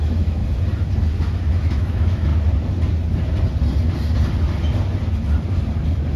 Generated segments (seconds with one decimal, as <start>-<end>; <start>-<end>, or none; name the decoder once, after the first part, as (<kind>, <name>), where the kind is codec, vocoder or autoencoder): 0.0-0.4 (autoencoder, DAC-VAE); 1.5-2.3